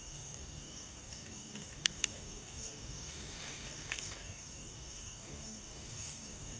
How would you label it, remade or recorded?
remade